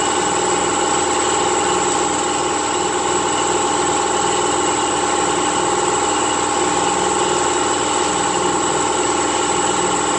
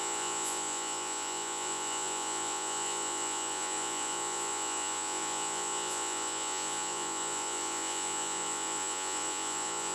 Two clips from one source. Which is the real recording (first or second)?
first